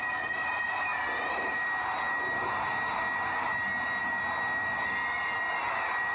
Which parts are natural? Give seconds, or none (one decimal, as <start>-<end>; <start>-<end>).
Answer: 0.0-6.1